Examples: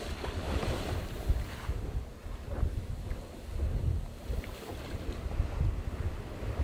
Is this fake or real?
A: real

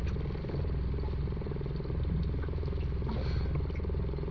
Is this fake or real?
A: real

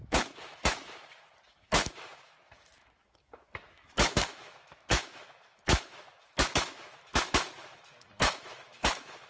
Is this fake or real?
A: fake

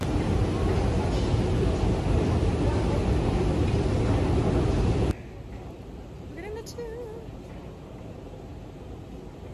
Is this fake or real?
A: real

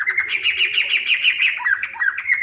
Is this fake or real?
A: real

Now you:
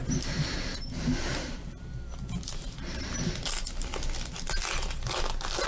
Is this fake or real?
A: real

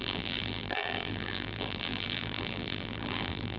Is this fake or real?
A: fake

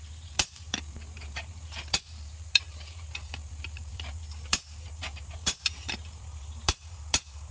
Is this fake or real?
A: fake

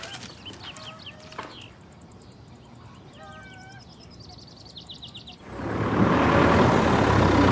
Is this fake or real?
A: real